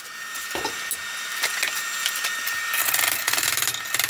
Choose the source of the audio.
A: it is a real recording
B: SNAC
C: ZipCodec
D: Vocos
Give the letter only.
A